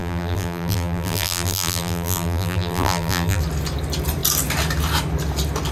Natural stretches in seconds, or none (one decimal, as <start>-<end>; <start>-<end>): 3.4-5.7